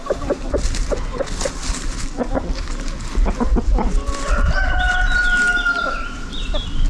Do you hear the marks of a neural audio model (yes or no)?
no